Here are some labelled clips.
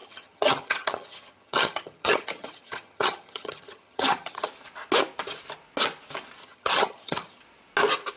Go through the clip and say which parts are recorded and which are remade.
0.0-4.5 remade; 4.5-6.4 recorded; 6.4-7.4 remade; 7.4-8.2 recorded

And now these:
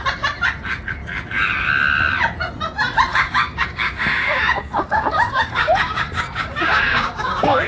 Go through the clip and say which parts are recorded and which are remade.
0.0-3.1 recorded; 3.1-7.7 remade

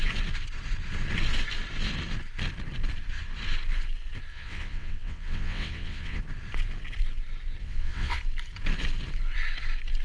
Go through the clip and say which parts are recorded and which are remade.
0.0-4.3 recorded; 4.3-6.2 remade; 6.2-7.6 recorded; 7.6-8.2 remade; 8.2-10.0 recorded